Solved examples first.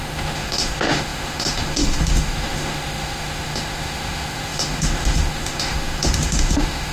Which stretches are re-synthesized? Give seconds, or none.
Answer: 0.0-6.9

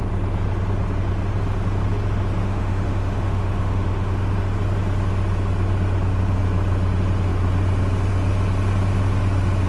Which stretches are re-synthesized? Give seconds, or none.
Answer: 2.4-4.4

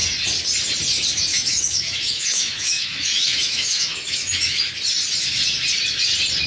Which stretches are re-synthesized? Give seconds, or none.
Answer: 1.3-4.7

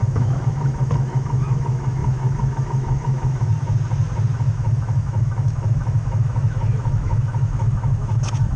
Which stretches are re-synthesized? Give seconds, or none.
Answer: 0.0-3.5; 4.4-8.6

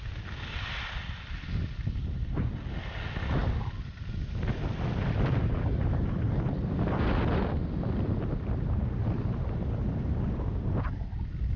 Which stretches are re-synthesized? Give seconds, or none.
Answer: none

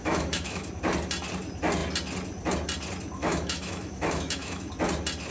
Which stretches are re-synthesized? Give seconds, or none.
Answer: 0.0-0.7; 3.2-4.7